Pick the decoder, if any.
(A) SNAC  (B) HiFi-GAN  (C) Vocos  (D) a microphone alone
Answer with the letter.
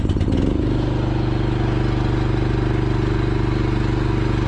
D